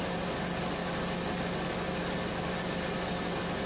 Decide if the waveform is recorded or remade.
recorded